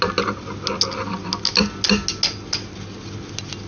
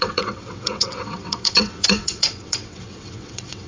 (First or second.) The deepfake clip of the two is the second